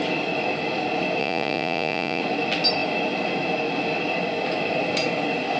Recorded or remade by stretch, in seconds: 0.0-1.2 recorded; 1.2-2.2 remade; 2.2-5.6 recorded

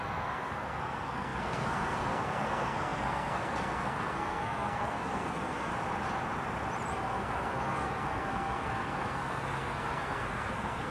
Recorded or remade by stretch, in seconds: 0.0-5.7 remade; 5.7-6.9 recorded; 6.9-10.9 remade

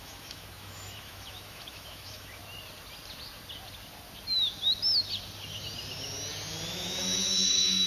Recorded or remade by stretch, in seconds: 0.0-2.4 remade; 2.4-6.7 recorded; 6.7-7.9 remade

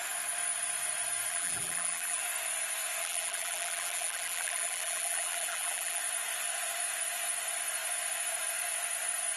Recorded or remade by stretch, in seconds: 0.0-1.3 recorded; 1.3-2.2 remade; 2.2-3.0 recorded; 3.0-6.0 remade; 6.0-9.4 recorded

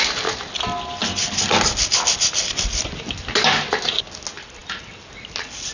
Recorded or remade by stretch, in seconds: 0.0-5.7 recorded

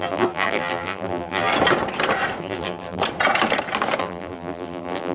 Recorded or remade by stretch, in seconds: 0.0-1.5 remade; 1.5-2.4 recorded; 2.4-3.0 remade; 3.0-4.0 recorded; 4.0-5.1 remade

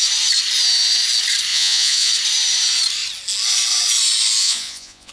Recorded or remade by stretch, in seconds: 0.0-1.5 recorded; 1.5-2.1 remade; 2.1-4.4 recorded; 4.4-5.1 remade